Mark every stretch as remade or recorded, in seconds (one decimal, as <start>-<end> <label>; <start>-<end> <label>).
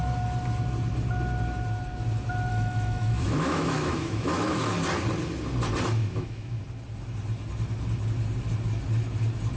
0.0-2.5 recorded; 2.5-4.7 remade; 4.7-6.0 recorded; 6.0-6.6 remade; 6.6-9.6 recorded